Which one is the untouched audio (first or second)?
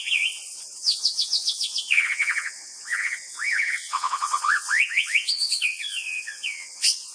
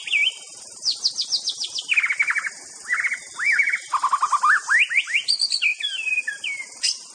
second